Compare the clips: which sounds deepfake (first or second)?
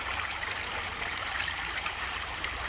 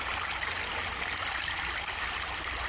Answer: first